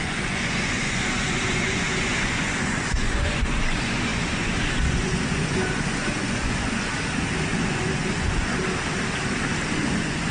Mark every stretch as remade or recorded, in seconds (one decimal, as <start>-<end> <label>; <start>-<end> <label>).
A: 0.0-6.9 remade; 6.9-7.5 recorded; 7.5-8.6 remade; 8.6-9.7 recorded; 9.7-10.3 remade